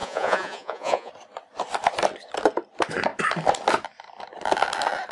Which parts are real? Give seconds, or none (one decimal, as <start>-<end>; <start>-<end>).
1.1-5.1